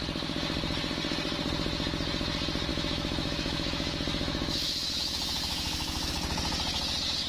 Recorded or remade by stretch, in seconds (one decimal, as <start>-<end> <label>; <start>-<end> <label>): 0.0-2.7 recorded; 2.7-6.1 remade; 6.1-7.3 recorded